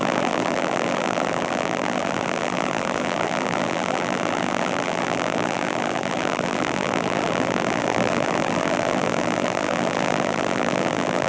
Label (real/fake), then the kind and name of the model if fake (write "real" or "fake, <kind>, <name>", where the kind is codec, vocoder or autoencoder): fake, vocoder, BigVGAN v2